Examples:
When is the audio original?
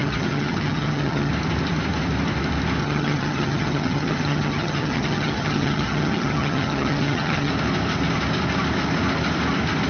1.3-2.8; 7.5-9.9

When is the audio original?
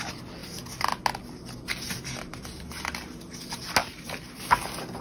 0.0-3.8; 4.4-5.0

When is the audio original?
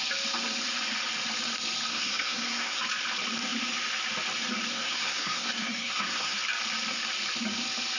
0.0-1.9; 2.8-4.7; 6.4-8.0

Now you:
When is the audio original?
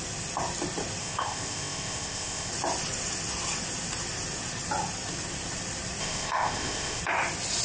0.0-1.0; 2.5-6.0; 7.0-7.6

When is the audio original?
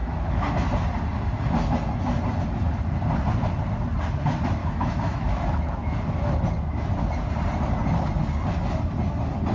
0.5-4.6; 6.4-9.5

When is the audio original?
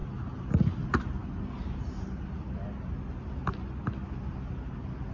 0.0-5.1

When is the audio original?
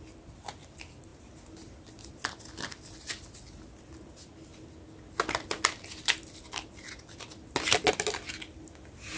0.0-9.2